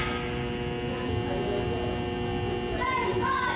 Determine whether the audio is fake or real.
real